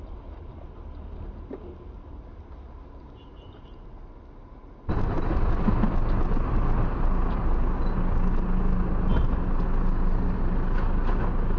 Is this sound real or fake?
real